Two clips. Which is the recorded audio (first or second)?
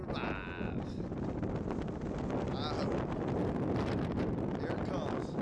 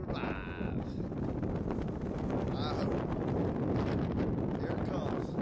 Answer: first